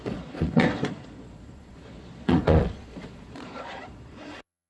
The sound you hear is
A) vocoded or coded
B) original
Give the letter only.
A